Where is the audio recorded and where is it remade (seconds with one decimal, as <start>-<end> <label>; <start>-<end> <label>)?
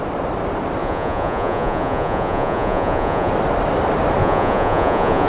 0.0-0.8 recorded; 0.8-3.3 remade; 3.3-4.2 recorded; 4.2-5.3 remade